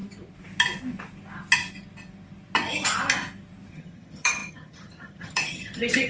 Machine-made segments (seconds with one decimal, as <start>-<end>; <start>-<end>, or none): 3.7-6.1